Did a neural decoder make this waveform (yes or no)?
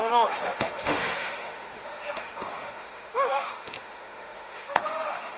yes